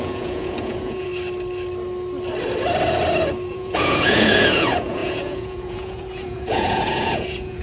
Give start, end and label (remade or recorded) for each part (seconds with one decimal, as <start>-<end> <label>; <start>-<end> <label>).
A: 0.0-1.1 remade; 1.1-3.5 recorded; 3.5-7.6 remade